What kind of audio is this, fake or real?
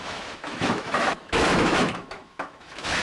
fake